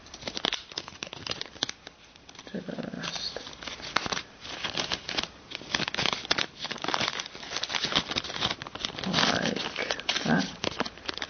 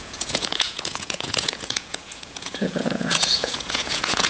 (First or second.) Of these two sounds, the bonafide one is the first